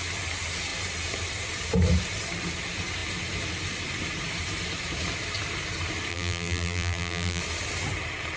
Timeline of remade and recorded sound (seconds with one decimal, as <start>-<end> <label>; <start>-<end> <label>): 0.0-6.1 recorded; 6.1-7.4 remade; 7.4-8.4 recorded